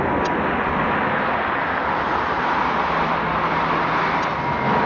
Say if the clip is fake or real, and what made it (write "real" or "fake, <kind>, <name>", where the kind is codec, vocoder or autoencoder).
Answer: real